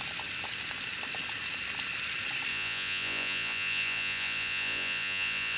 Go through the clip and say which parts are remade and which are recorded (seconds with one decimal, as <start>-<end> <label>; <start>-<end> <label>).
0.0-2.5 recorded; 2.5-5.6 remade